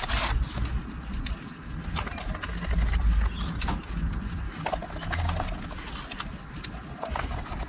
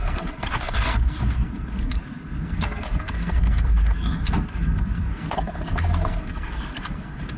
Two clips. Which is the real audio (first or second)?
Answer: first